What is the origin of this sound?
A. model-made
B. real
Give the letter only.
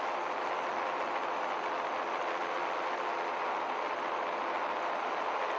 B